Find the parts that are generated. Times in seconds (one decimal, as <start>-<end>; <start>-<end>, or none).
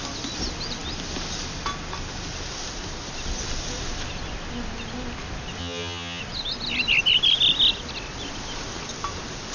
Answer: 5.6-6.2